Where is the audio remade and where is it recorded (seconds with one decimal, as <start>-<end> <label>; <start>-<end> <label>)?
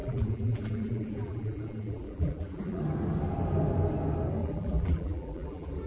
0.0-2.8 remade; 2.8-4.4 recorded; 4.4-5.9 remade